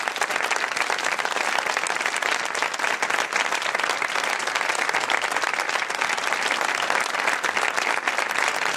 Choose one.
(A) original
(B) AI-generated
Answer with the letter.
A